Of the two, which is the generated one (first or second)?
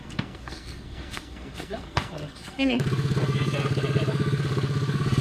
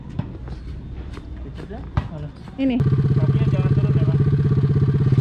first